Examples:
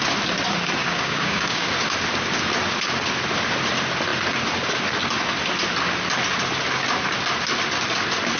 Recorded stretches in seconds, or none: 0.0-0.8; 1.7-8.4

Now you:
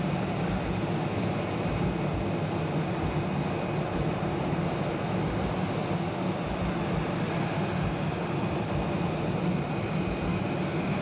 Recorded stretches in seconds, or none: 0.0-10.3

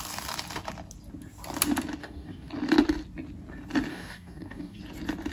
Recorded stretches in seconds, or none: 0.0-2.0; 2.5-3.9; 4.8-5.3

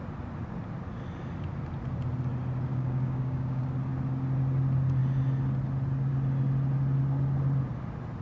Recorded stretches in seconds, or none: 0.0-2.7; 3.6-8.2

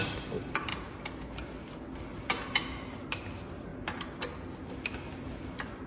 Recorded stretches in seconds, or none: 0.0-5.9

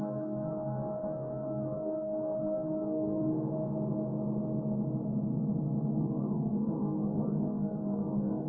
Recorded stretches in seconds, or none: 3.3-6.0